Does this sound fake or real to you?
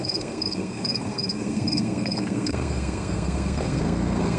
fake